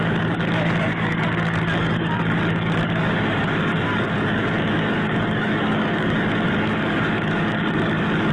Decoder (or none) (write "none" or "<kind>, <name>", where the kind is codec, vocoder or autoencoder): codec, DAC